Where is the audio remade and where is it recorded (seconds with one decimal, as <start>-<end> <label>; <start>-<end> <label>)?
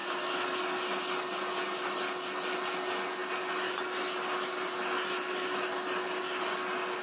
0.0-7.0 recorded